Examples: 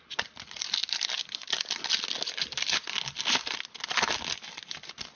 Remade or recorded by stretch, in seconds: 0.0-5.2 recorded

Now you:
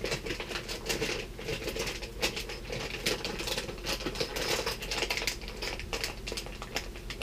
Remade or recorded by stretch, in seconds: 0.0-7.2 recorded

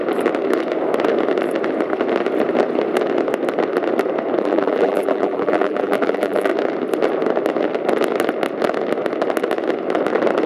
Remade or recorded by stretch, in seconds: 0.0-4.4 recorded; 4.4-6.5 remade; 6.5-10.5 recorded